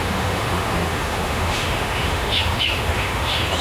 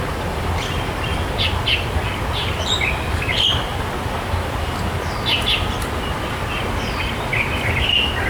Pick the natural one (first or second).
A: second